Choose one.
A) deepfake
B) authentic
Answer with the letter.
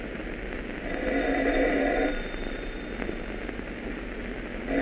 B